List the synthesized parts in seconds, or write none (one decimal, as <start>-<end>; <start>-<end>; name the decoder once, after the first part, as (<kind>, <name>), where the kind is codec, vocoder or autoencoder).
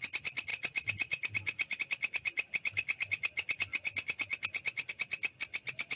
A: none